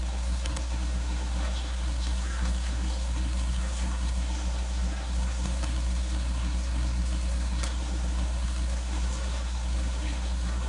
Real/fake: fake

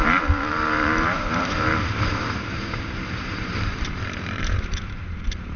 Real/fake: fake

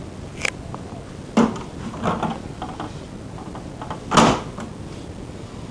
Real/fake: real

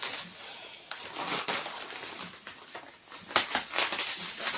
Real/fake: real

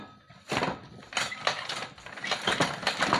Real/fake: real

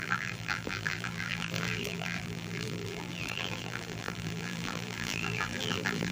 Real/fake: fake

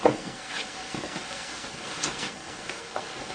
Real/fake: fake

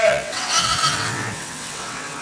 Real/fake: fake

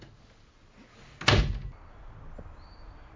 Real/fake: real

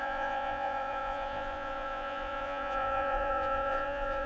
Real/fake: fake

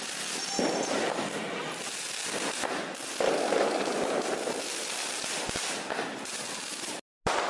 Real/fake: real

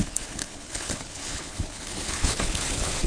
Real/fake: fake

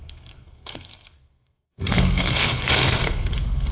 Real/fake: fake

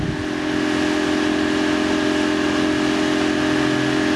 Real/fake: real